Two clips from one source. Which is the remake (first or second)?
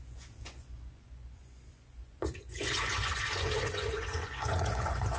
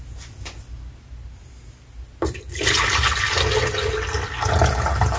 first